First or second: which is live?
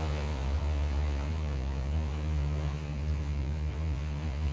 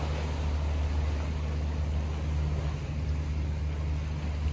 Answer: second